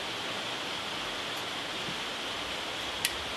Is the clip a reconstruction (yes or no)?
no